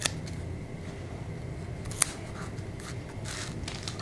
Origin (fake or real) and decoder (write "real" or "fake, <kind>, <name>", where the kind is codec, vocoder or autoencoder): real